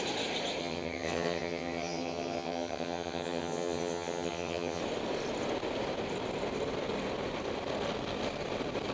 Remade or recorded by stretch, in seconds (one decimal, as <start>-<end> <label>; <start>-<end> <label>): 0.0-0.6 recorded; 0.6-4.8 remade; 4.8-8.9 recorded